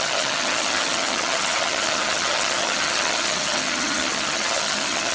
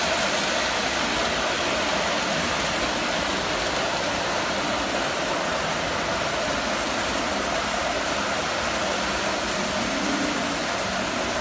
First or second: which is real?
second